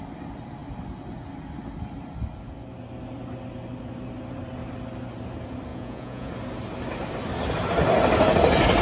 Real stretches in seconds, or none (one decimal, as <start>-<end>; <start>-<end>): 0.0-5.7; 6.3-8.8